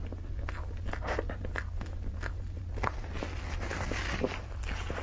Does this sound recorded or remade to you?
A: recorded